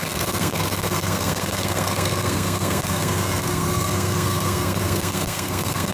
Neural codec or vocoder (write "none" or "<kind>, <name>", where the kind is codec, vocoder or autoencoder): codec, SNAC